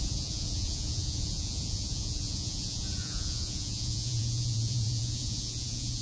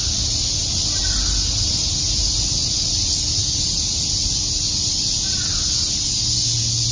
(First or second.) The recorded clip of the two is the second